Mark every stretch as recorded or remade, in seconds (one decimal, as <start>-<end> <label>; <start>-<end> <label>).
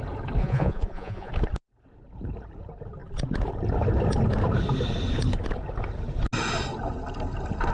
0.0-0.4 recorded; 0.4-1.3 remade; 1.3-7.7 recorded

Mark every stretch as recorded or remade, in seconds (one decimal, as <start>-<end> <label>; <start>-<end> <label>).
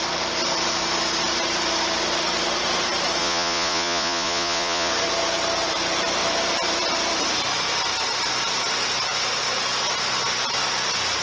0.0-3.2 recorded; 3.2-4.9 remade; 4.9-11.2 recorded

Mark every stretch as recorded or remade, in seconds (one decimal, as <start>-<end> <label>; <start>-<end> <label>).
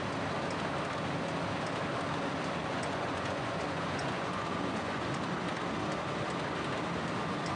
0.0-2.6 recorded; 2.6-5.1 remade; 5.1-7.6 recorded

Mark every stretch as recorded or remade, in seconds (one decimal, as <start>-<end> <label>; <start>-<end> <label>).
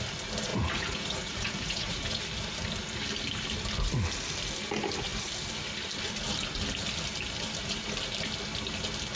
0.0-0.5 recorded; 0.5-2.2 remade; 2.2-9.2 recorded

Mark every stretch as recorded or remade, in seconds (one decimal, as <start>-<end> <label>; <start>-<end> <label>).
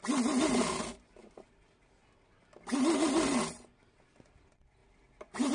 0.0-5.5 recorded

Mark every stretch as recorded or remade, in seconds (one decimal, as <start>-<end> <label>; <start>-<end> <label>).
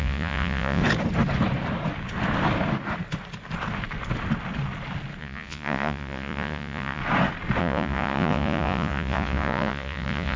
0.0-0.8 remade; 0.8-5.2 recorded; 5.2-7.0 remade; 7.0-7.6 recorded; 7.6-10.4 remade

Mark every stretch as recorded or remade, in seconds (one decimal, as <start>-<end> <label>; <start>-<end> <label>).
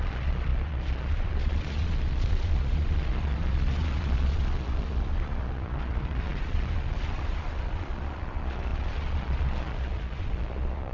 0.0-10.9 remade